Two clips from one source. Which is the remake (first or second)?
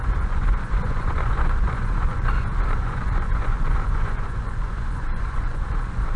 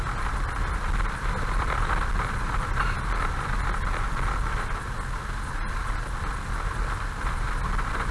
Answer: first